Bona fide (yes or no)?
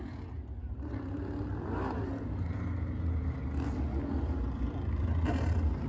yes